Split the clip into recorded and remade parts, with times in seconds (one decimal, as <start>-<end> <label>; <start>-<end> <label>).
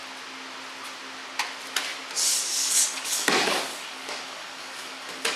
0.0-2.3 recorded; 2.3-5.4 remade